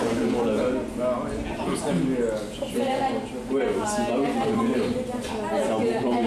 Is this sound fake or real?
real